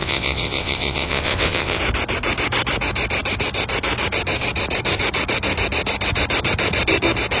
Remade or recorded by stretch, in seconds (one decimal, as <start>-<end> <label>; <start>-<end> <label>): 0.0-1.8 remade; 1.8-7.4 recorded